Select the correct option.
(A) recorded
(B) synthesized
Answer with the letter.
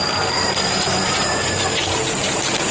A